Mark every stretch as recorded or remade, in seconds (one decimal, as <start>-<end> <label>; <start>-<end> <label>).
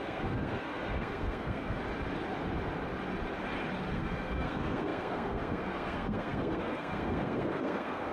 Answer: 0.0-1.8 remade; 1.8-3.9 recorded; 3.9-8.1 remade